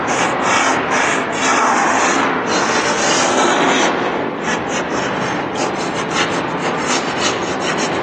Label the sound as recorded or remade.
recorded